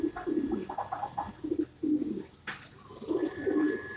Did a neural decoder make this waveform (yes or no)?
no